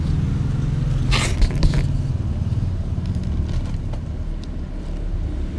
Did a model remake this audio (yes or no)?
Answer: no